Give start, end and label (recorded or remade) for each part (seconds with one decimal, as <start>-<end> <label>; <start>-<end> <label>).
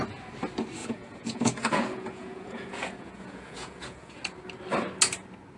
0.0-0.8 recorded; 0.8-4.2 remade; 4.2-5.6 recorded